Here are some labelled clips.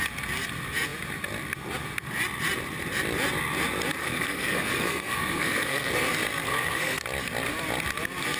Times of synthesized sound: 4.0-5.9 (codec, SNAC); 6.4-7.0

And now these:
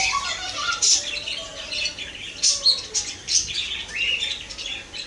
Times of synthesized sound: none

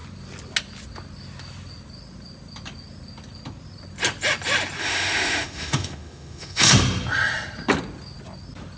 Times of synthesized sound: 4.8-6.7 (autoencoder, DAC-VAE)